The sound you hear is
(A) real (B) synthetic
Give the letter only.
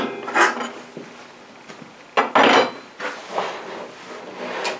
A